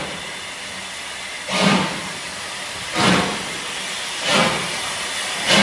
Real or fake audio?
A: real